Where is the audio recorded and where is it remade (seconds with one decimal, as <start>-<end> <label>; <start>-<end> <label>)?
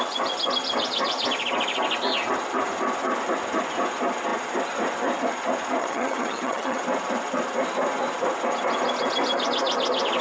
0.0-5.8 recorded; 5.8-6.8 remade; 6.8-10.2 recorded